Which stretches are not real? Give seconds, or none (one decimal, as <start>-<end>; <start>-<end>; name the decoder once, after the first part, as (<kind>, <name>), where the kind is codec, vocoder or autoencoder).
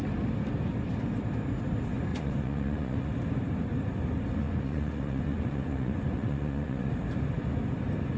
2.1-3.1 (vocoder, Vocos); 4.4-6.9